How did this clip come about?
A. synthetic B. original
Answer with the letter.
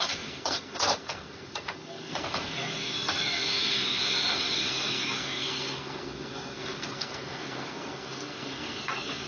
A